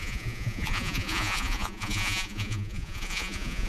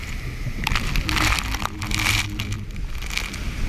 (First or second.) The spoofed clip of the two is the first